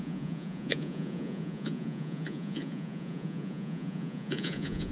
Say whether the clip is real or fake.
fake